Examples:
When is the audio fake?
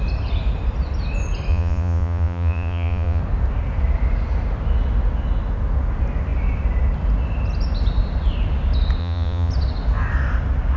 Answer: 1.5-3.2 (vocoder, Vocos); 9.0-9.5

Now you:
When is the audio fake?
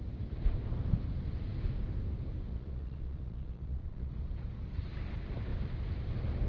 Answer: 2.5-4.1 (vocoder, Vocos)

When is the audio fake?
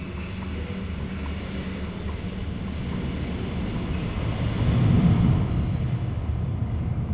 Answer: none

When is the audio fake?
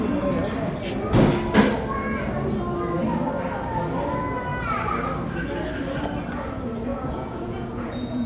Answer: 6.9-8.3 (vocoder, Vocos)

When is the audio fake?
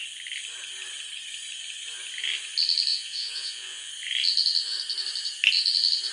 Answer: 2.9-3.9 (vocoder, Vocos)